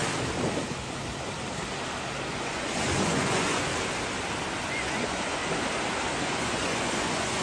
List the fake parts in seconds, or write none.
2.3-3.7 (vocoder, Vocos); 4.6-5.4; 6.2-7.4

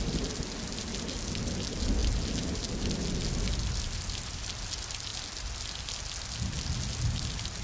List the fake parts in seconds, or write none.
none

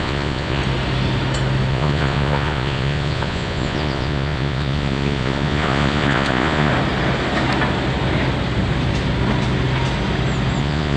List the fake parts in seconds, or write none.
0.0-0.6 (vocoder, Vocos); 1.7-6.7; 10.6-11.0

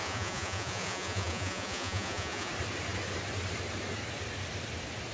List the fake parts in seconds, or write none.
0.0-2.5 (vocoder, Vocos)

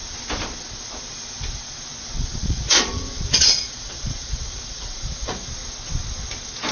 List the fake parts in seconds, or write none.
2.2-5.5 (vocoder, Vocos)

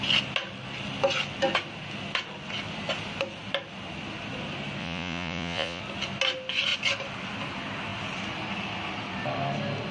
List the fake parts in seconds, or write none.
4.8-5.8 (vocoder, Vocos)

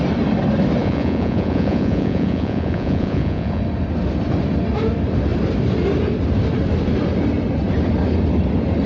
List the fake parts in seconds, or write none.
0.8-3.6 (vocoder, Vocos)